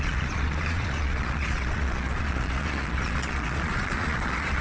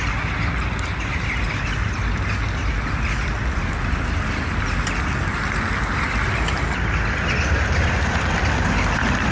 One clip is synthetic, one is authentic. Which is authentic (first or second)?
second